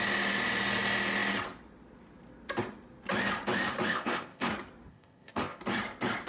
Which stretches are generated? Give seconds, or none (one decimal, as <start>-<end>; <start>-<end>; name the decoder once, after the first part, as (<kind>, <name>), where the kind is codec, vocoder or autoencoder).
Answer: 3.9-4.5 (codec, ZipCodec); 4.9-5.6